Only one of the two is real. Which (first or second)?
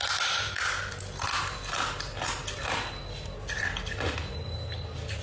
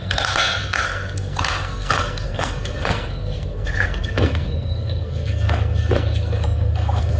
first